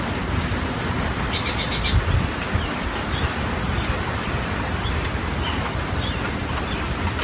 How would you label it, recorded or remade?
recorded